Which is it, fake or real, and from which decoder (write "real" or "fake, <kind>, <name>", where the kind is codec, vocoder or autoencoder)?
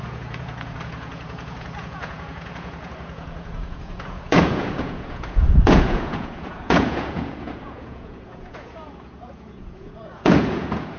fake, vocoder, Vocos